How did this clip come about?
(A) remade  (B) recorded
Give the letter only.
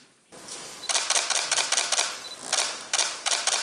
A